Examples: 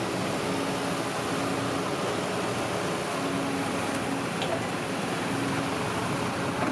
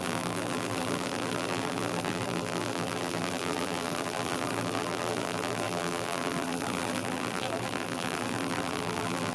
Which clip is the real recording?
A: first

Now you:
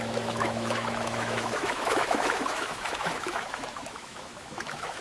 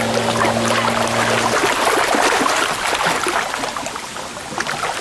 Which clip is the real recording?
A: second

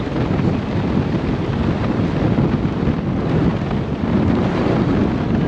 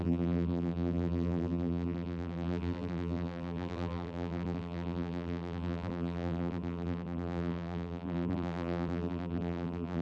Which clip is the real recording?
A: first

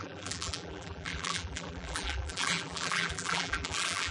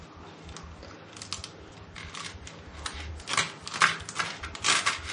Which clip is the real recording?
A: second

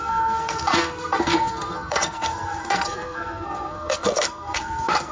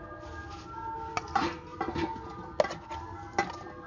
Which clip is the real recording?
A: second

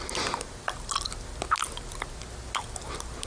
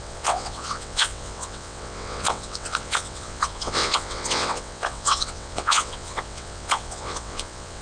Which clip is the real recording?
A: first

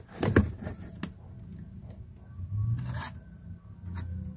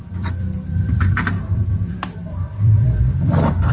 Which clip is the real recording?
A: first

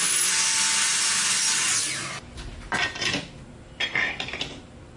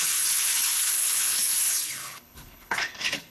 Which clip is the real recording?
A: first